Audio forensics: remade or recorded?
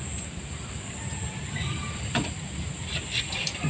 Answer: remade